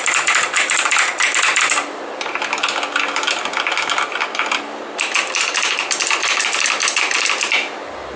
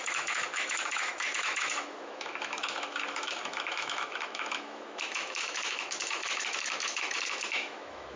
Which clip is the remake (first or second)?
second